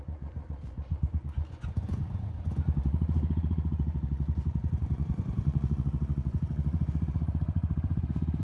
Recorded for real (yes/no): no